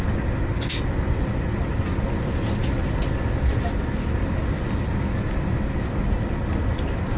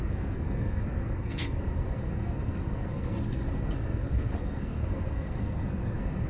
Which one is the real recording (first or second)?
first